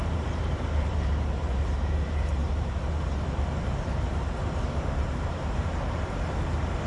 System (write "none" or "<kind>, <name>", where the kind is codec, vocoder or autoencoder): vocoder, BigVGAN v2